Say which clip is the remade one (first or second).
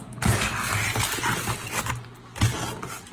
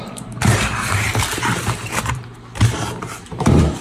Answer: second